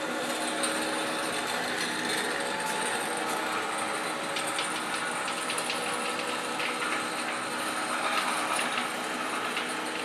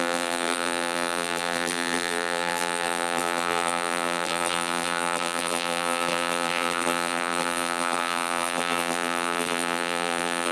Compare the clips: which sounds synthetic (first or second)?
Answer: second